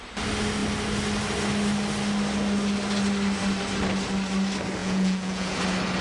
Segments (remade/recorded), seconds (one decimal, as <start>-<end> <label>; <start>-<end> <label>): 0.0-4.8 recorded; 4.8-5.6 remade; 5.6-6.0 recorded